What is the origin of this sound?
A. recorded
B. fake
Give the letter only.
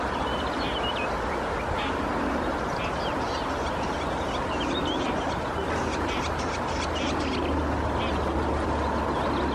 A